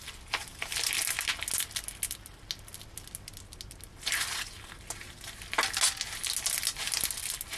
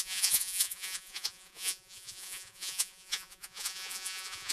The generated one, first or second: second